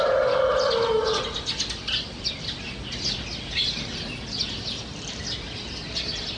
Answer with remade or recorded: recorded